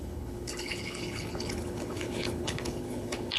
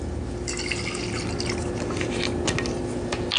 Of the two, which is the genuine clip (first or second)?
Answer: second